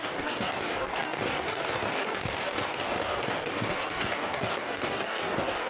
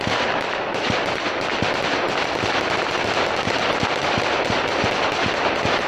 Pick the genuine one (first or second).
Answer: second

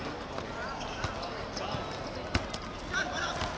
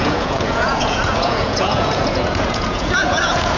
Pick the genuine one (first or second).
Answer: first